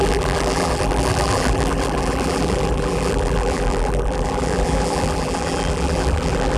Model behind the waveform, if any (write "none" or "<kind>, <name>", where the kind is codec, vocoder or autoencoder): vocoder, BigVGAN v2